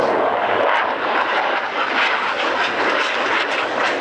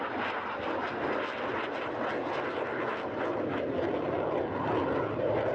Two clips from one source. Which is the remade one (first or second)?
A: first